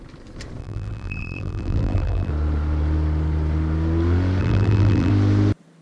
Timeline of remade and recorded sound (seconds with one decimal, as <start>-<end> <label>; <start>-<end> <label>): 0.0-0.6 recorded; 0.6-2.3 remade; 2.3-4.4 recorded; 4.4-5.1 remade; 5.1-5.8 recorded